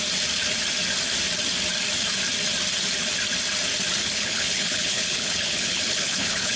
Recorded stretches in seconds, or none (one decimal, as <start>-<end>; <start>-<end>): 0.0-4.0